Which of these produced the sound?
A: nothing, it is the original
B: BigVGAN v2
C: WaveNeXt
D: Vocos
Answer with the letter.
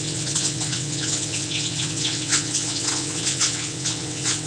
C